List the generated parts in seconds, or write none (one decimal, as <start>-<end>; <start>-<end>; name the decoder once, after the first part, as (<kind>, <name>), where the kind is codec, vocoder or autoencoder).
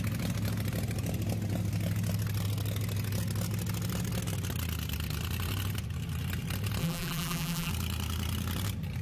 6.8-7.7 (vocoder, BigVGAN v2)